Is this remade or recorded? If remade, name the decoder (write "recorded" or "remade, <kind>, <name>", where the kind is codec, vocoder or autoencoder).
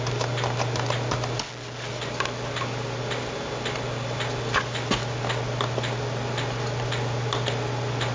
recorded